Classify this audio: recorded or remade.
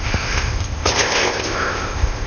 remade